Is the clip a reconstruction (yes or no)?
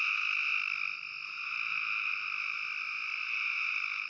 no